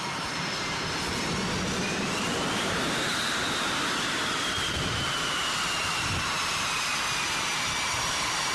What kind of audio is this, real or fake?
fake